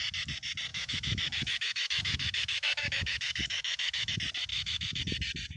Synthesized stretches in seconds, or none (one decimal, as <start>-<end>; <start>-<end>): 0.7-4.1; 4.5-5.0